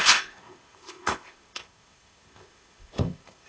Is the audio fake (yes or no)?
yes